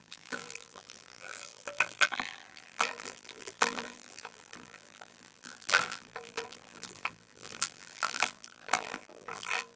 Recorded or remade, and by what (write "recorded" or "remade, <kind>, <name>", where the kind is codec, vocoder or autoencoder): remade, vocoder, BigVGAN v2